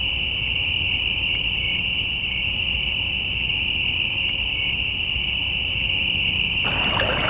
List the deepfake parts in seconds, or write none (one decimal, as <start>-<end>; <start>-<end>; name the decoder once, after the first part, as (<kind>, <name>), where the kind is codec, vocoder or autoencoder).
none